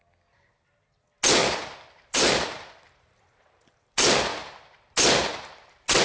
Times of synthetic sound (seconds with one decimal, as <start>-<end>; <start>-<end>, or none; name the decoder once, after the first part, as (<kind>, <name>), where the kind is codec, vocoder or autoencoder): 1.4-2.8 (vocoder, BigVGAN v2)